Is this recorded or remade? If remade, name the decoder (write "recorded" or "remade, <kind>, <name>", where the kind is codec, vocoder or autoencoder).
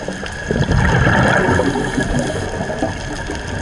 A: recorded